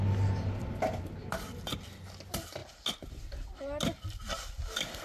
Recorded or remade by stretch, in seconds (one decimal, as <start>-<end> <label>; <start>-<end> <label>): 0.0-5.0 recorded